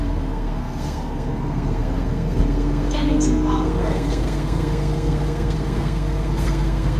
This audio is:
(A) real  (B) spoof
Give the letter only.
B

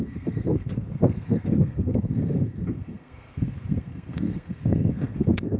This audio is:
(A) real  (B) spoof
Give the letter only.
B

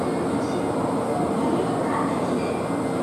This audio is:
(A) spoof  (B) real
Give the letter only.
B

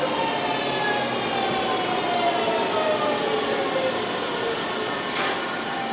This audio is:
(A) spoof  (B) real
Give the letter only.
B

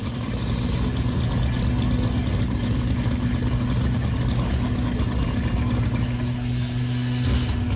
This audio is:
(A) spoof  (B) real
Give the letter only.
B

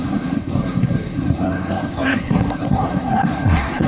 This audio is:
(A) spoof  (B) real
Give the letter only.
A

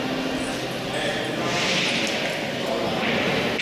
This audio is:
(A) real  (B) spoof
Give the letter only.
A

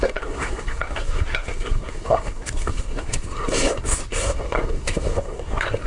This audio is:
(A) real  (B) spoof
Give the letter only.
B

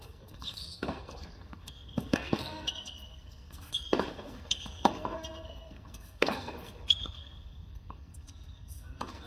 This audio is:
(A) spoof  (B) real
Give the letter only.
A